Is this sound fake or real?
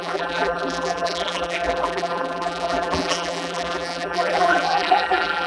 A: fake